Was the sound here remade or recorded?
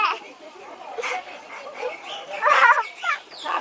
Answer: remade